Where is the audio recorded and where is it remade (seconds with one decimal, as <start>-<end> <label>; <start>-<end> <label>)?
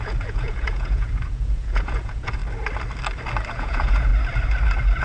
0.0-2.4 remade; 2.4-3.5 recorded; 3.5-4.1 remade; 4.1-5.0 recorded